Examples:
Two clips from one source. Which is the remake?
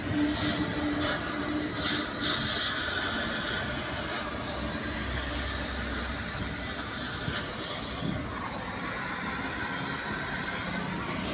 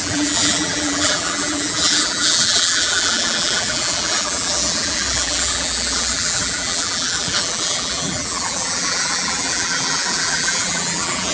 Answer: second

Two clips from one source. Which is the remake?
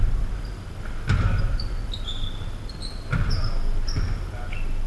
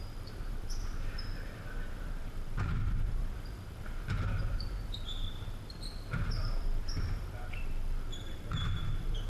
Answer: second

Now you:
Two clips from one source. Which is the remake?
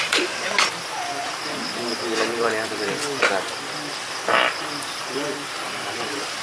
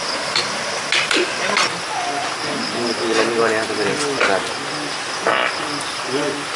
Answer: first